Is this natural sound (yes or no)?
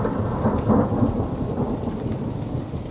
yes